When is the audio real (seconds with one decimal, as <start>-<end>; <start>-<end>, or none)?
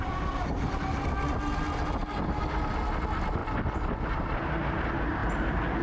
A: 0.0-5.8